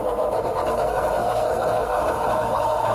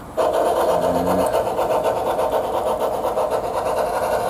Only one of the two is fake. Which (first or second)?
first